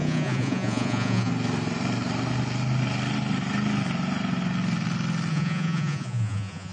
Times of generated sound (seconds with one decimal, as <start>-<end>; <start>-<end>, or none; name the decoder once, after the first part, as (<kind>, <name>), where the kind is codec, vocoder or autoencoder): 0.0-1.3 (vocoder, Vocos); 5.3-6.7